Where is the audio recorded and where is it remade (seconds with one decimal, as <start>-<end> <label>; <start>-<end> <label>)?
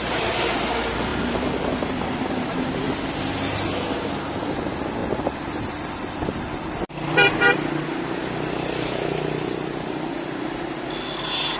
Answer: 0.0-1.1 recorded; 1.1-3.1 remade; 3.1-5.0 recorded; 5.0-7.7 remade; 7.7-11.6 recorded